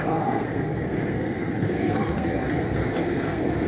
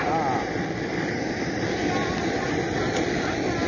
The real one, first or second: second